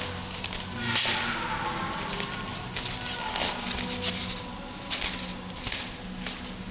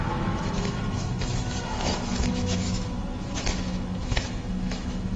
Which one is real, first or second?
first